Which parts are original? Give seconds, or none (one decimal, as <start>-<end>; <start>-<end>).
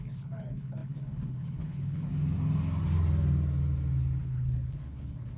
2.1-4.2